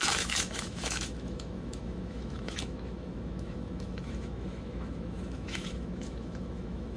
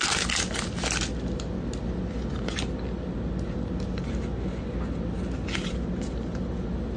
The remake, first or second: first